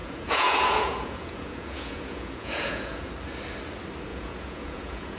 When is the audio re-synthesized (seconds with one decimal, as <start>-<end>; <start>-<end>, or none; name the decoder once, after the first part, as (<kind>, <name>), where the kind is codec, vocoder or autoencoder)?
0.0-3.1 (vocoder, Vocos); 4.1-5.2